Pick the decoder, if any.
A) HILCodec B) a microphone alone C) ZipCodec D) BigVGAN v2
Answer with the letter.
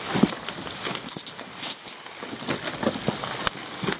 B